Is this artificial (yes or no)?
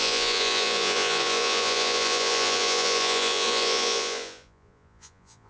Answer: yes